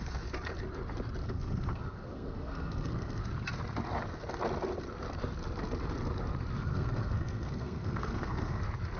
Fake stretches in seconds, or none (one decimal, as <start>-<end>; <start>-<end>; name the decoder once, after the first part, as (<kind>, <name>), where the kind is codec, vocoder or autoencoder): 1.2-3.2 (codec, SNAC); 6.7-8.6